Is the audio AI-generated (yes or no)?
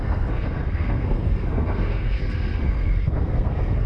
yes